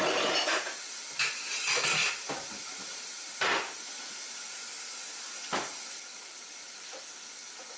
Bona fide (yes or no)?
yes